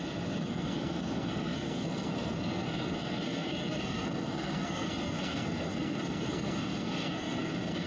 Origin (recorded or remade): remade